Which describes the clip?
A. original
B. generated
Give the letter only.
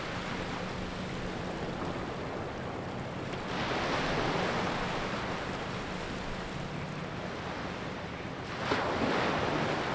A